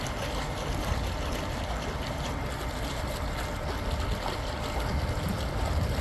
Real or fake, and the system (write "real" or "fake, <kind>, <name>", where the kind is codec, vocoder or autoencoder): real